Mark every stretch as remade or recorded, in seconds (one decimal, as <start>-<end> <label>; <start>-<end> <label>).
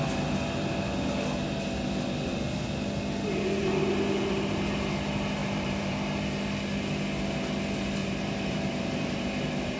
0.0-5.4 recorded; 5.4-6.0 remade; 6.0-8.0 recorded; 8.0-9.8 remade